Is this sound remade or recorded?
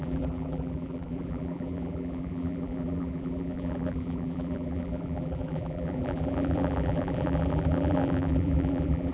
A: remade